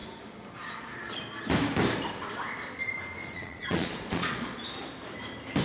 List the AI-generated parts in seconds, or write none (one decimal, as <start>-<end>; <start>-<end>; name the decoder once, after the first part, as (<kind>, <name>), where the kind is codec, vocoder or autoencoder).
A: 3.2-4.6 (vocoder, Vocos)